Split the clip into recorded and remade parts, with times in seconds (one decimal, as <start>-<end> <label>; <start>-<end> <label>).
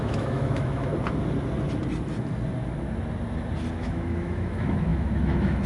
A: 0.0-0.9 remade; 0.9-3.7 recorded; 3.7-5.7 remade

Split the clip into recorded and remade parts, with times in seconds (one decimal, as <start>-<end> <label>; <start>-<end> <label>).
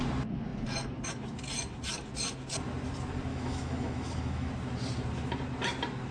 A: 0.0-3.3 recorded; 3.3-4.5 remade; 4.5-6.1 recorded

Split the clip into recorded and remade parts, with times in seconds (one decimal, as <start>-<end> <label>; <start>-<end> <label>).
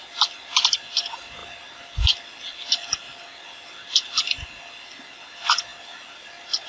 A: 0.0-6.7 recorded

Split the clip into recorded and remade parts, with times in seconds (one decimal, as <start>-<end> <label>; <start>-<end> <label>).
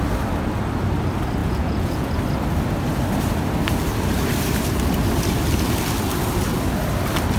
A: 0.0-1.4 recorded; 1.4-2.1 remade; 2.1-7.4 recorded